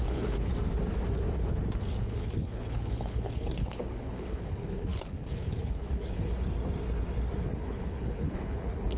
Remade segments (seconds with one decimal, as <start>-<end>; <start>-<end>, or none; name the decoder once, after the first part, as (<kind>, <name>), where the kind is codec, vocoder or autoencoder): 0.0-0.5 (codec, HILCodec); 2.0-6.3; 7.4-9.0